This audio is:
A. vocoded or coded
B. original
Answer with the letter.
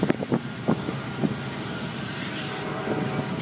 B